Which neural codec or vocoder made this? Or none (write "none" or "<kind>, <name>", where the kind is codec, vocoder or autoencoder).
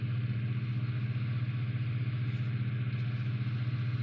none